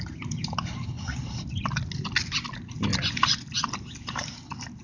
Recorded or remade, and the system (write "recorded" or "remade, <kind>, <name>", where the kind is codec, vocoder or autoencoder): recorded